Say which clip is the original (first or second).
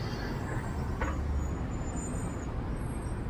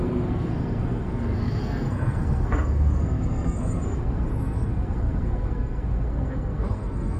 first